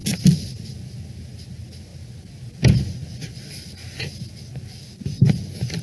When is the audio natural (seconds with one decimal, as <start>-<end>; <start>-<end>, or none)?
0.0-5.8